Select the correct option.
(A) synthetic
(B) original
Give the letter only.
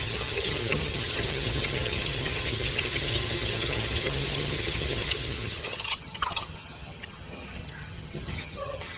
A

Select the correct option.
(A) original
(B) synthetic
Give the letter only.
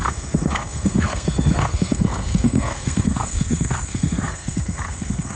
B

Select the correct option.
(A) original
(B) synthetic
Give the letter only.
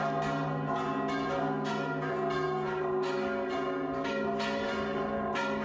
A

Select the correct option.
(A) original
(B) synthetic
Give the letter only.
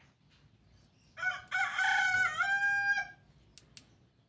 A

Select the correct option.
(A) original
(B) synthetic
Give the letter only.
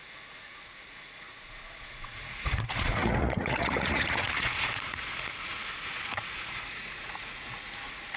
B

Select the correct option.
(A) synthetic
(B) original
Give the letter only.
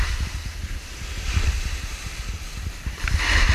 B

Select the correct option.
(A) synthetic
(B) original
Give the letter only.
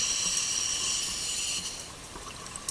B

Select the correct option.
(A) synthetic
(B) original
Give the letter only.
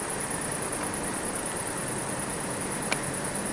A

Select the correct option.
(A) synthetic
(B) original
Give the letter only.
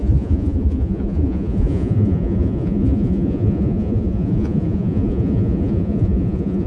A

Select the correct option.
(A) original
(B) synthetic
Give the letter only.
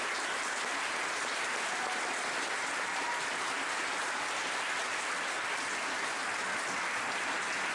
A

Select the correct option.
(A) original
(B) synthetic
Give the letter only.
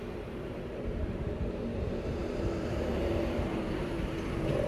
B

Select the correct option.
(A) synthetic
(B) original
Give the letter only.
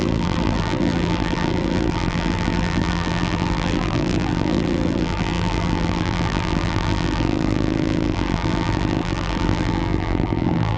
A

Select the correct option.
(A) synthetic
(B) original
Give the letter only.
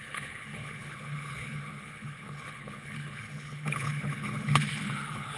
A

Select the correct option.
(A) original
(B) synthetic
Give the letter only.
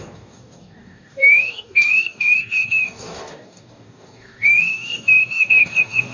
B